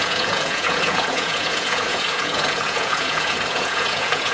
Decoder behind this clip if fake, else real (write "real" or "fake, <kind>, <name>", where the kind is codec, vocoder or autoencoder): fake, vocoder, Vocos